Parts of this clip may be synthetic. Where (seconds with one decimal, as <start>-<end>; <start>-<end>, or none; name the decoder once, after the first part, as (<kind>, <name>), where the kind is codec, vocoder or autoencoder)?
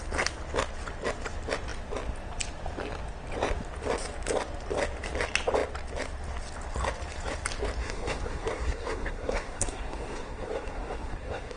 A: 7.8-11.6 (codec, SNAC)